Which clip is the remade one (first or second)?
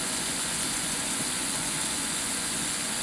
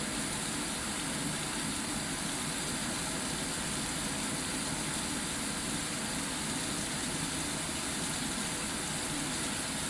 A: first